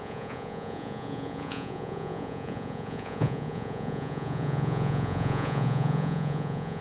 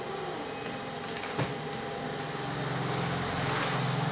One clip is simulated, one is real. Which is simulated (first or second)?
first